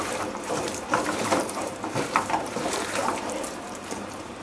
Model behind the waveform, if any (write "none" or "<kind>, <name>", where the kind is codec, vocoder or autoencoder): vocoder, BigVGAN v2